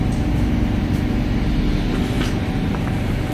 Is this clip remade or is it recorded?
recorded